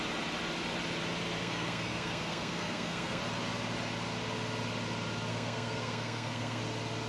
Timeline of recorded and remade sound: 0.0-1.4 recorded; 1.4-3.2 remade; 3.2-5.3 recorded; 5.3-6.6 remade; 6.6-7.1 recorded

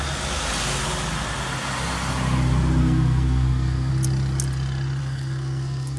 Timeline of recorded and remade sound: 0.0-2.8 recorded; 2.8-3.9 remade; 3.9-5.0 recorded; 5.0-6.0 remade

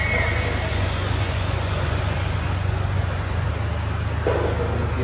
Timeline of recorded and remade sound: 0.0-0.7 recorded; 0.7-3.5 remade; 3.5-5.0 recorded

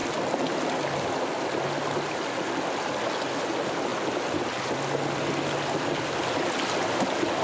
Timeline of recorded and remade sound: 0.0-7.4 recorded

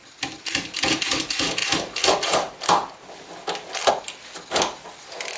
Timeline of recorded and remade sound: 0.0-5.4 recorded

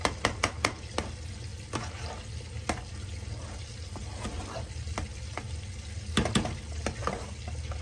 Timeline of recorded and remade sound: 0.0-7.8 recorded

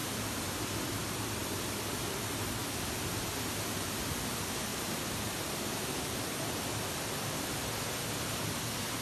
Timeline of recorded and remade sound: 0.0-0.6 remade; 0.6-4.7 recorded; 4.7-6.1 remade; 6.1-9.0 recorded

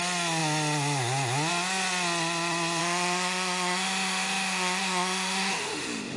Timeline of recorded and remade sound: 0.0-2.8 recorded; 2.8-6.2 remade